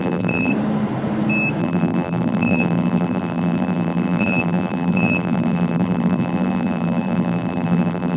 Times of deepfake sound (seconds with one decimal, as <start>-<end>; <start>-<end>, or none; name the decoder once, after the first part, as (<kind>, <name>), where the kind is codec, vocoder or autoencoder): 0.0-0.5 (vocoder, BigVGAN v2); 1.6-8.2